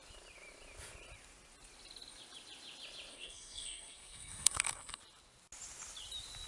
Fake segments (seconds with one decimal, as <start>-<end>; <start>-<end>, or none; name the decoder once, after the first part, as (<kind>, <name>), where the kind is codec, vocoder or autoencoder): 3.1-5.0 (codec, SNAC)